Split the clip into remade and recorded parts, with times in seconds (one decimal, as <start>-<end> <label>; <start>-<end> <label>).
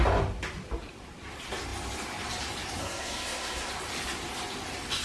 0.0-2.8 recorded; 2.8-3.7 remade; 3.7-5.0 recorded